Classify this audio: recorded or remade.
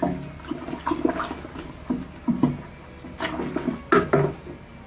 recorded